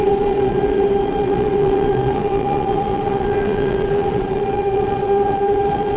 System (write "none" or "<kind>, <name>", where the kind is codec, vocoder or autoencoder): vocoder, Vocos